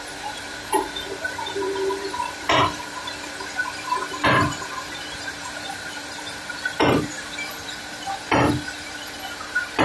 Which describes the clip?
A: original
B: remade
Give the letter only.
B